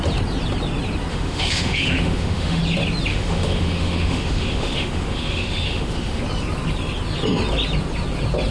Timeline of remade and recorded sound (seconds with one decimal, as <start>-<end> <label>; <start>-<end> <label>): 0.0-1.1 recorded; 1.1-2.6 remade; 2.6-3.1 recorded; 3.1-6.2 remade; 6.2-8.5 recorded